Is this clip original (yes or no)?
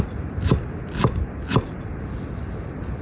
yes